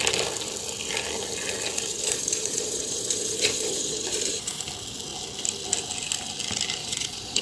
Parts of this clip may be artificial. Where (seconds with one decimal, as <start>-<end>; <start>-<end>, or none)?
1.9-4.6; 6.8-7.4